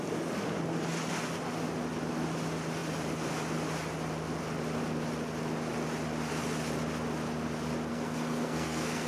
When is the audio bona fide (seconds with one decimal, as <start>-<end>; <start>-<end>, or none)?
0.0-7.9